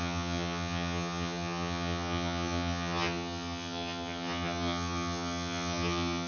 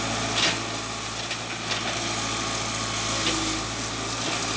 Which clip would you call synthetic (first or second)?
first